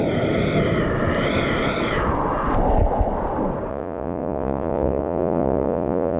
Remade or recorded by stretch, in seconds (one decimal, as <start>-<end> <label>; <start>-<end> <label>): 0.0-3.7 recorded; 3.7-6.2 remade